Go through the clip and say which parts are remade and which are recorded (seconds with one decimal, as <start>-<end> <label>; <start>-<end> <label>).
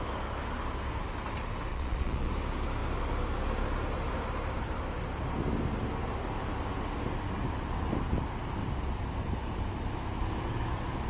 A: 0.0-1.7 recorded; 1.7-2.3 remade; 2.3-11.1 recorded